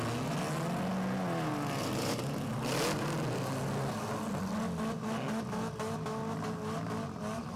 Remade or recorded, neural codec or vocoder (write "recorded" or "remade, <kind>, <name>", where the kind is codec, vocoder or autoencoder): recorded